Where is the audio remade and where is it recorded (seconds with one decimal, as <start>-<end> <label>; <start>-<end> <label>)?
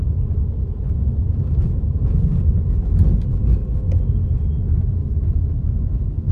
0.0-1.2 recorded; 1.2-2.0 remade; 2.0-5.0 recorded; 5.0-6.3 remade